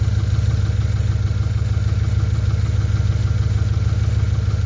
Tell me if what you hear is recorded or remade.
recorded